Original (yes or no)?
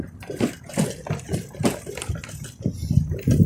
yes